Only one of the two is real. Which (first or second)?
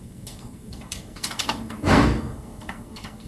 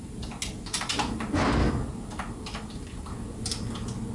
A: second